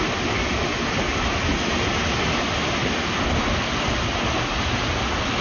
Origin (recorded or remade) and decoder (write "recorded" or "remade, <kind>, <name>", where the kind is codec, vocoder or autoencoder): recorded